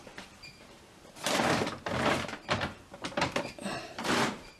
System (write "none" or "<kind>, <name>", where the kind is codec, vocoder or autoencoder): vocoder, BigVGAN v2